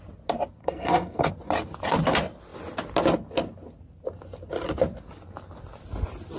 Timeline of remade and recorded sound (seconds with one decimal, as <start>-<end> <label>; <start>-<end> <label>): 0.0-0.6 recorded; 0.6-1.3 remade; 1.3-6.4 recorded